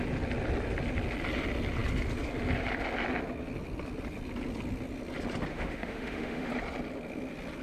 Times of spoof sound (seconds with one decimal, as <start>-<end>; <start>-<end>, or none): 5.5-6.5